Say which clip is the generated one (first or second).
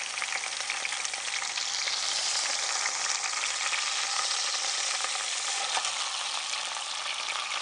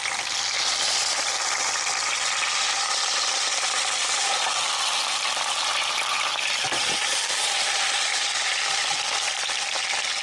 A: second